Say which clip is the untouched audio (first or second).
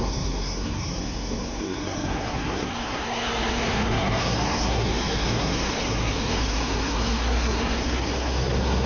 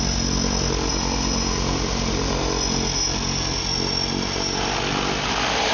second